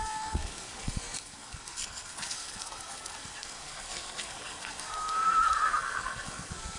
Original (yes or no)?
no